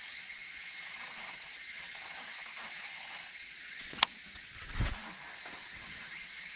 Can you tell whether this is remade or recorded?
remade